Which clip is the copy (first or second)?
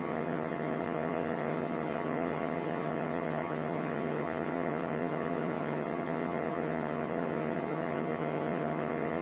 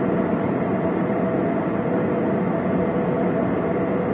first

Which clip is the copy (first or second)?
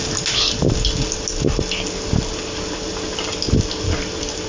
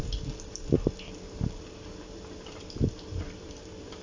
second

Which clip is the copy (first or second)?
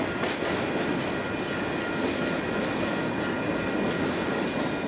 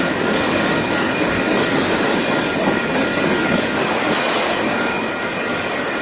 second